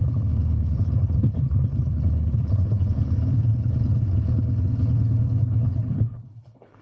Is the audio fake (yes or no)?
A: yes